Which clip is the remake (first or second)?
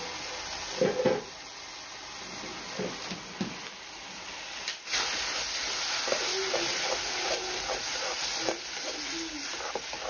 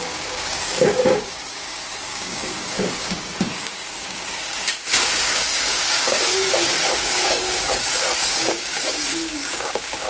second